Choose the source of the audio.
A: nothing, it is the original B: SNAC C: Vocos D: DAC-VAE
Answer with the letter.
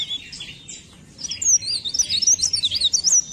A